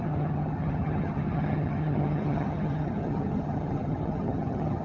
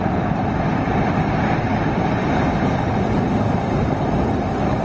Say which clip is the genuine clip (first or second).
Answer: second